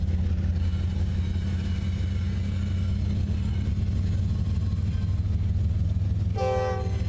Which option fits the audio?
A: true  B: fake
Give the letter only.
A